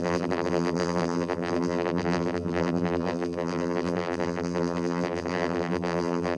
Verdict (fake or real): fake